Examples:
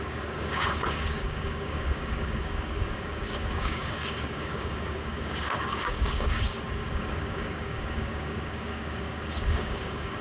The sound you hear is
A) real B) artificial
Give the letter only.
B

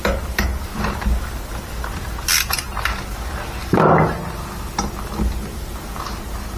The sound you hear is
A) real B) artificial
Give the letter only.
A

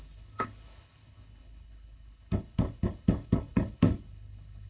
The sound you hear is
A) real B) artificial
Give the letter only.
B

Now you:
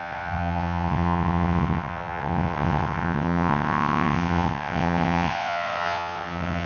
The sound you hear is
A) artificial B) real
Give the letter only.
A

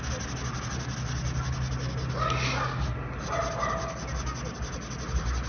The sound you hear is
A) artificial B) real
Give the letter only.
B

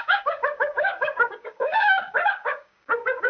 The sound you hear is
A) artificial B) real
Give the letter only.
A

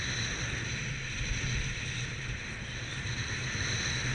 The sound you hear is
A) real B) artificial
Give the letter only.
A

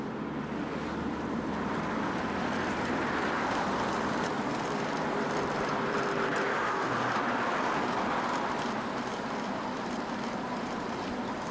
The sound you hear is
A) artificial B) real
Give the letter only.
A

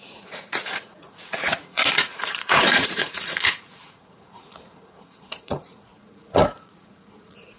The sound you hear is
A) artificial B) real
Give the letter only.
A